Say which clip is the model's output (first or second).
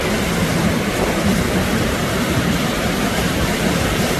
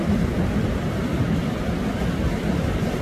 first